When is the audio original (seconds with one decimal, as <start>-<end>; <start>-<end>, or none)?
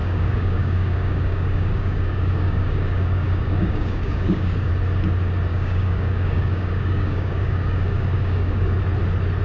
4.7-5.5; 8.8-9.4